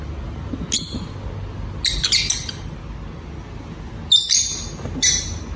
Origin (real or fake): real